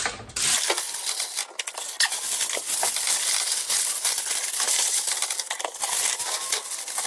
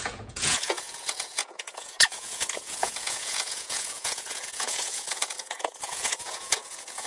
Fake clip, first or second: second